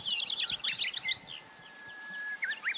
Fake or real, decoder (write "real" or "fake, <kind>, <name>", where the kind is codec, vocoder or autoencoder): real